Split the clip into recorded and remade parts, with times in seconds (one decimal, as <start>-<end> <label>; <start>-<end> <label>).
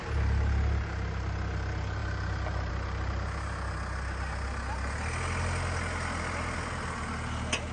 0.0-7.7 recorded